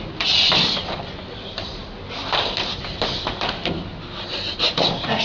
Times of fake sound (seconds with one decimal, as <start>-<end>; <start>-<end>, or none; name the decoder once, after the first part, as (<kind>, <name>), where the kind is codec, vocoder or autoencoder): none